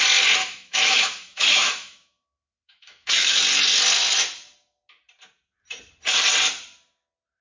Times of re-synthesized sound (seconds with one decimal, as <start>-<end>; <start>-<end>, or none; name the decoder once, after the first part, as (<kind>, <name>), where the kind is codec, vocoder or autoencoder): 0.4-3.4 (autoencoder, DAC-VAE)